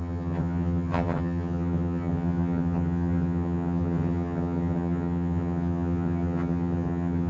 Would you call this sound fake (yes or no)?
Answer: yes